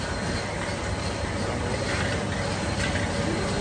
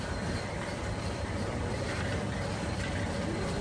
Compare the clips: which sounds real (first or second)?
first